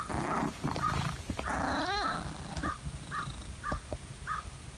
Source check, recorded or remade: recorded